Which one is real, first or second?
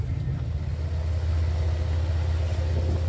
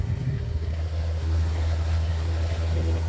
first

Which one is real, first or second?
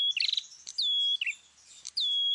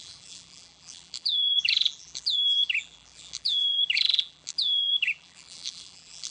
first